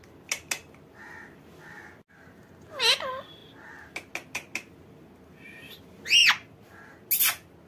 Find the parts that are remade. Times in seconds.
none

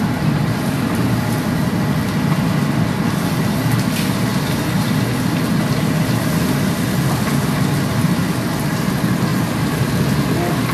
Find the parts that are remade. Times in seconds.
9.3-9.9 (vocoder, BigVGAN v2)

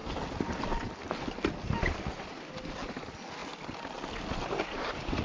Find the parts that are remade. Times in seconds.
none

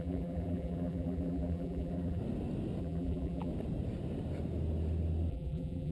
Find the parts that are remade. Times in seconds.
0.0-2.2 (vocoder, BigVGAN v2); 2.8-3.5; 5.3-5.9

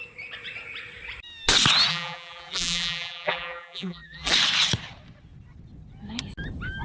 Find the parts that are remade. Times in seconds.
1.9-4.3 (vocoder, BigVGAN v2)

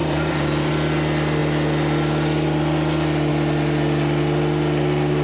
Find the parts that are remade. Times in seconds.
0.0-0.7 (vocoder, BigVGAN v2)